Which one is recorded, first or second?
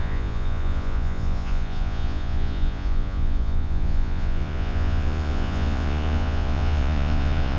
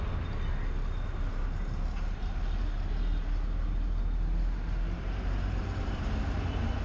second